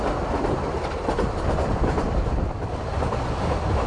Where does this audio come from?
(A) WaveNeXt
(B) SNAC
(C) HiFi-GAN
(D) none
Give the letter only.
D